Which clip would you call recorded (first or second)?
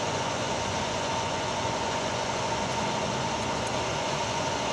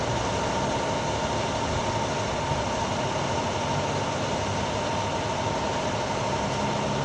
second